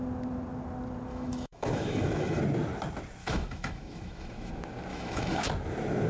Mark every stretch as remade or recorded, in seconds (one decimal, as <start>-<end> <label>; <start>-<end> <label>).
0.0-1.1 recorded; 1.1-2.4 remade; 2.4-3.2 recorded; 3.2-4.5 remade; 4.5-4.9 recorded; 4.9-5.5 remade; 5.5-6.1 recorded